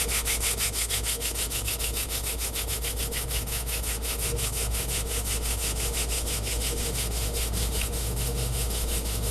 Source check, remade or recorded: remade